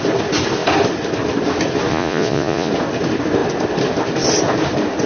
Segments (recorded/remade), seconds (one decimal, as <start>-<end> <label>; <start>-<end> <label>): 0.0-1.9 recorded; 1.9-2.7 remade; 2.7-5.1 recorded